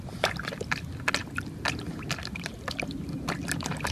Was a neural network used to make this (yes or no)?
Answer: no